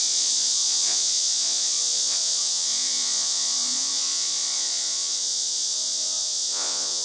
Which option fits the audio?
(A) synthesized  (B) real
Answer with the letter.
A